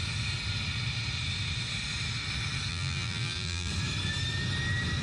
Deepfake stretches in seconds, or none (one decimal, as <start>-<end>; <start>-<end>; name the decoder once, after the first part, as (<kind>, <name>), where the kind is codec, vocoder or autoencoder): 2.7-3.7 (vocoder, BigVGAN v2)